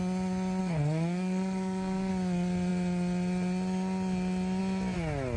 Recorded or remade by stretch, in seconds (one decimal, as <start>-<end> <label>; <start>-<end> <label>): 0.0-0.6 recorded; 0.6-2.1 remade; 2.1-5.4 recorded